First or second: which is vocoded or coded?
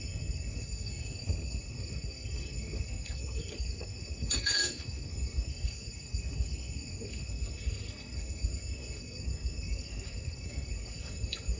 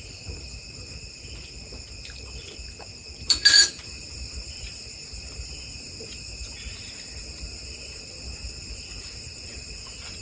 first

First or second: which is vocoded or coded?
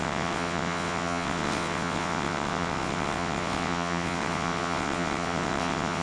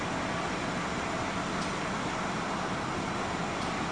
first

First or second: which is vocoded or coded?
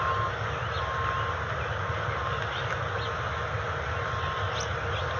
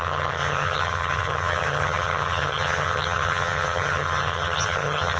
second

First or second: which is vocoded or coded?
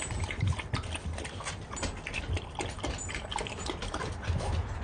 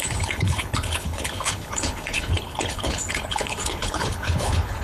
second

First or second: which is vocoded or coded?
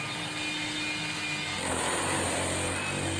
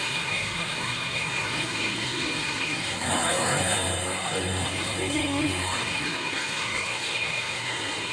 second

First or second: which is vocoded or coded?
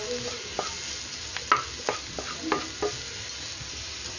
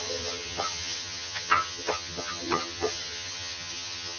second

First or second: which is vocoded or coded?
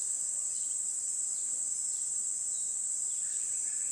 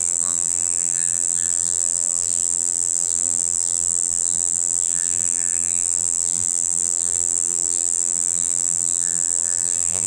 second